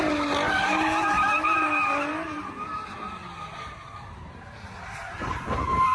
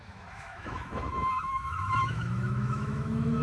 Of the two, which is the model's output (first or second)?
second